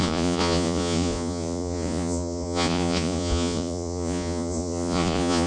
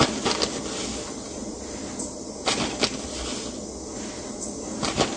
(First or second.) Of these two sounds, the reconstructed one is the first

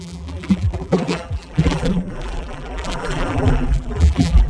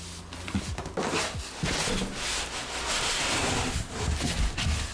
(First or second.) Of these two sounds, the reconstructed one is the first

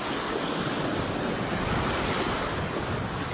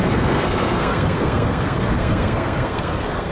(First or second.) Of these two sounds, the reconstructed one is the second